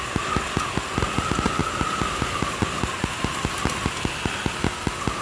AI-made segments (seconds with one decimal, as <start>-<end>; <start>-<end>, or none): none